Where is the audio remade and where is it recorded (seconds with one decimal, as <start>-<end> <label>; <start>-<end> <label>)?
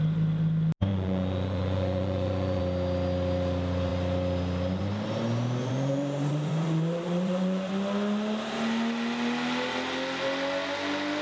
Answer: 0.0-0.9 recorded; 0.9-2.6 remade; 2.6-5.6 recorded; 5.6-7.7 remade; 7.7-11.2 recorded